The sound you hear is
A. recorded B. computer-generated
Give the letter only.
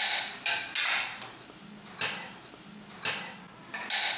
A